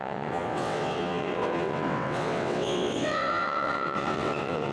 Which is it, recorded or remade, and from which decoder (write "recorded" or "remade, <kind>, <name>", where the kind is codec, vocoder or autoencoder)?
remade, vocoder, WaveNeXt